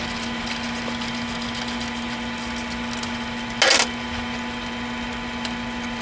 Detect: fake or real real